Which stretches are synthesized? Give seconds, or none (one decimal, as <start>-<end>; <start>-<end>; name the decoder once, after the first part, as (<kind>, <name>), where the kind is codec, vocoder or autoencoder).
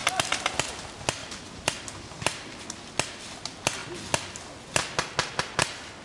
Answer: 1.2-2.6 (vocoder, BigVGAN v2)